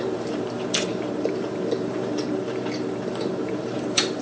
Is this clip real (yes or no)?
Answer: no